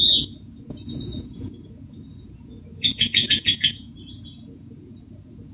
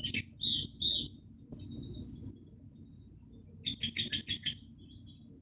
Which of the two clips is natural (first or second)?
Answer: second